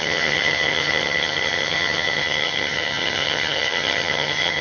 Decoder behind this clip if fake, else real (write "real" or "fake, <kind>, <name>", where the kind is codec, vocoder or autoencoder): fake, vocoder, HiFi-GAN